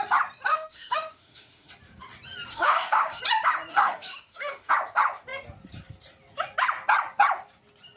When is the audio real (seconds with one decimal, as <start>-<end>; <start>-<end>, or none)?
0.0-0.5; 1.7-2.5; 3.2-3.7; 4.7-8.0